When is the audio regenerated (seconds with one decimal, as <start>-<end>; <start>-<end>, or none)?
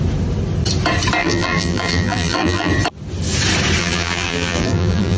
1.2-2.7; 3.8-5.2